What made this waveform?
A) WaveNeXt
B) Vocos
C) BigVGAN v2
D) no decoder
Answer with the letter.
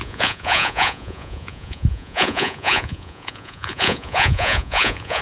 B